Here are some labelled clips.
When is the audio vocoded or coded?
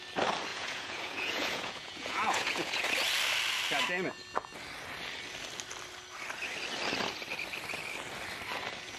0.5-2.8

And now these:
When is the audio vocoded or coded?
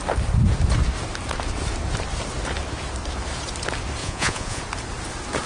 4.0-4.6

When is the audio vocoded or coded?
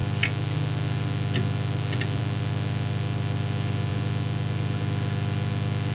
none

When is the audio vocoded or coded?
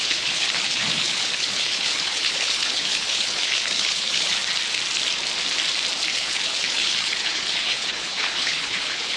0.0-4.4; 6.1-9.2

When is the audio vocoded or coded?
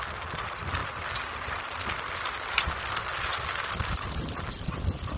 none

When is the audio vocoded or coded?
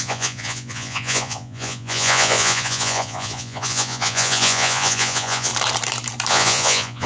0.0-5.5; 6.3-7.1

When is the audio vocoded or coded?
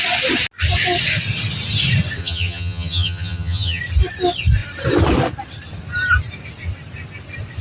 2.2-3.8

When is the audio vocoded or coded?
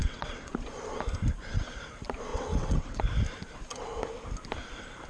0.0-0.5; 2.3-3.0